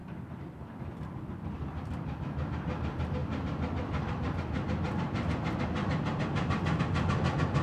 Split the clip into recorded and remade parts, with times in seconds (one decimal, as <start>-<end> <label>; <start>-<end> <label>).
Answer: 0.0-7.6 recorded